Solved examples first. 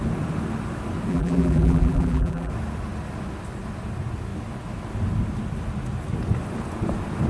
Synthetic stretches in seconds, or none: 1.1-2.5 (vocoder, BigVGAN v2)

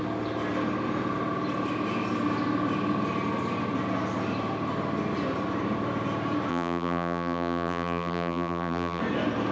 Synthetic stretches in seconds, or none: 6.5-9.0 (vocoder, BigVGAN v2)

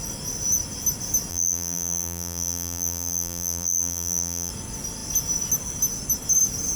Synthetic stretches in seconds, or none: 1.3-4.5 (vocoder, BigVGAN v2)

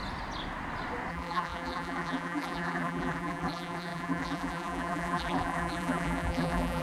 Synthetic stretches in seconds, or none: 1.1-6.8 (vocoder, BigVGAN v2)

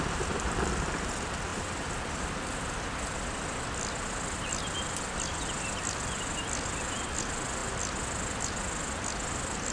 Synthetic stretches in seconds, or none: 1.5-2.8 (vocoder, BigVGAN v2)